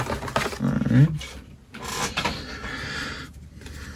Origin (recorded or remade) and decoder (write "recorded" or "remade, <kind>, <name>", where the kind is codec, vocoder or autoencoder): recorded